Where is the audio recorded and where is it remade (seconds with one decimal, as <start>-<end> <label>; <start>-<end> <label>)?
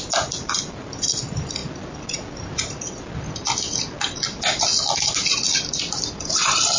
0.0-1.6 remade; 1.6-5.7 recorded; 5.7-6.8 remade